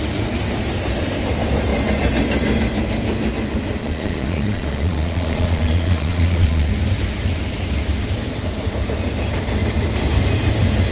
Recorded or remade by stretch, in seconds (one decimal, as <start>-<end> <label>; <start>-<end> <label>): 0.0-3.8 recorded; 3.8-6.7 remade; 6.7-10.9 recorded